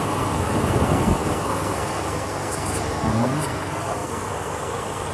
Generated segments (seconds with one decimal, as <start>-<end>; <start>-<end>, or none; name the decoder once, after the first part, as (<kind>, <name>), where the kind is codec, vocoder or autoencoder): 0.0-5.1 (codec, SNAC)